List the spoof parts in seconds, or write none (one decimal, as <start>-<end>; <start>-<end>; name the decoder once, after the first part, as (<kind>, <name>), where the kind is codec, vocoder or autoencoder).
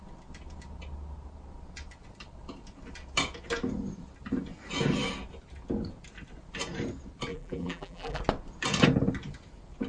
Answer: 7.3-8.2 (vocoder, BigVGAN v2)